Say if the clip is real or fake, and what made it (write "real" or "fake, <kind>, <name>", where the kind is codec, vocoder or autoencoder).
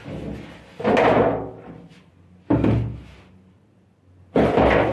real